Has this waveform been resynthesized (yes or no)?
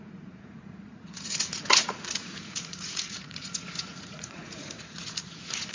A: yes